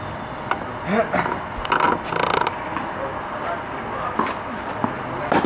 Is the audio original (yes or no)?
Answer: yes